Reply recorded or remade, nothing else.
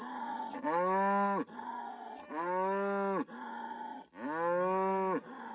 recorded